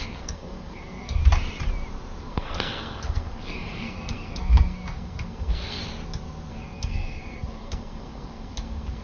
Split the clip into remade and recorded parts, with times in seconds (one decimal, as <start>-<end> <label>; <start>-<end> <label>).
0.0-1.2 remade; 1.2-2.2 recorded; 2.2-5.8 remade; 5.8-6.5 recorded; 6.5-9.0 remade